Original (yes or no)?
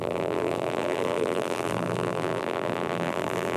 no